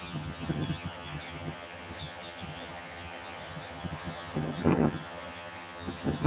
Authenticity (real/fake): fake